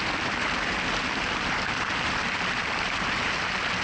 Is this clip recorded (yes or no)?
yes